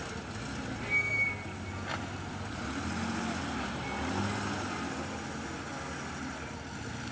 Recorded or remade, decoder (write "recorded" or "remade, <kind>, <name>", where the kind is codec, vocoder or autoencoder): recorded